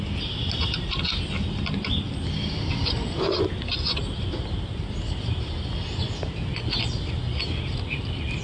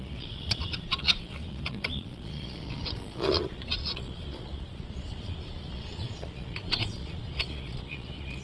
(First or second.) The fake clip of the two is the second